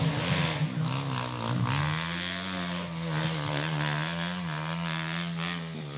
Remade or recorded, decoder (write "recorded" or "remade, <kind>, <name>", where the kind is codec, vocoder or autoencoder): recorded